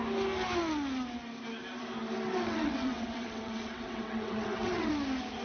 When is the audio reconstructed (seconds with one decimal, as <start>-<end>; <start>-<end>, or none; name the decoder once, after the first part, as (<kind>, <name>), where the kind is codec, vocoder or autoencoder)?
2.3-4.9 (vocoder, WaveNeXt)